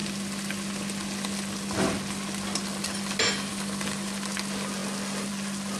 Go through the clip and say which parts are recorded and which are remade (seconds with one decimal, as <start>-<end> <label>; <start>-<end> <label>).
0.0-5.8 recorded